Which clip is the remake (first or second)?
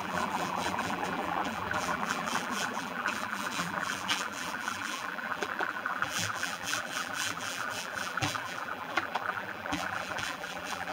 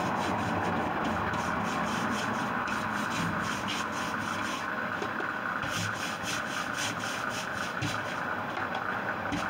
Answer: first